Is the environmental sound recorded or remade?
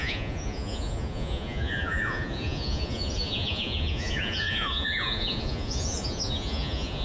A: remade